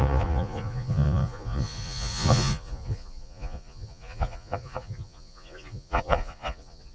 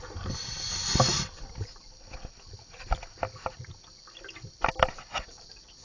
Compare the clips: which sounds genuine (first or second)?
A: second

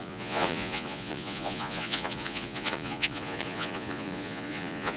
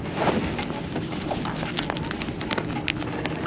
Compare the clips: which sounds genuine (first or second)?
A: second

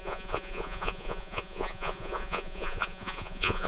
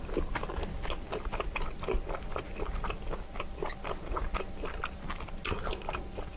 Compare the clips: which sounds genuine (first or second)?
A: second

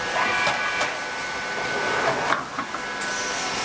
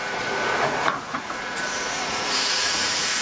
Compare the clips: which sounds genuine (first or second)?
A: first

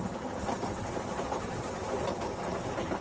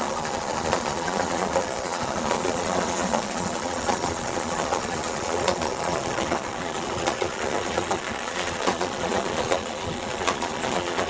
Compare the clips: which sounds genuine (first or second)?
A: first